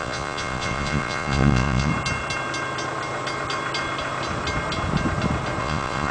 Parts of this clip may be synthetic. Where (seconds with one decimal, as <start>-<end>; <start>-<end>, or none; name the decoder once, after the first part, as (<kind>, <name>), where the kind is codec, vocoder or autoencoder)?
0.0-1.9 (vocoder, Vocos); 5.6-6.1